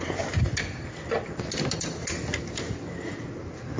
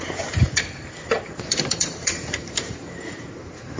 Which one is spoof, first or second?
second